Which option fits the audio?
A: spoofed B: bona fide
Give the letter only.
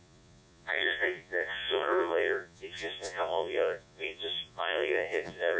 A